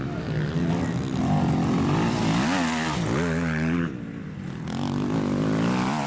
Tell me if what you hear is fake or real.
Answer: real